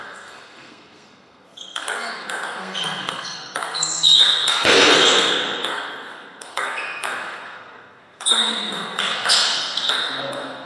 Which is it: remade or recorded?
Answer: remade